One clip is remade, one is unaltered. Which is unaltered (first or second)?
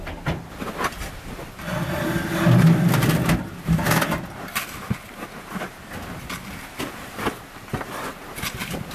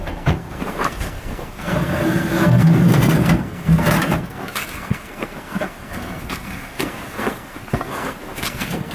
first